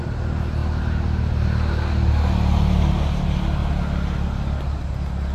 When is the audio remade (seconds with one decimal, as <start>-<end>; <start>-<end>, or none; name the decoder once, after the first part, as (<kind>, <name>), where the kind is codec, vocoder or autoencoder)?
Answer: none